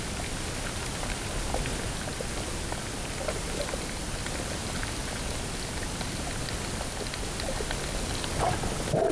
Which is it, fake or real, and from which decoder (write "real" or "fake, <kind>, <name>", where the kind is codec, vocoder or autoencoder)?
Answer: real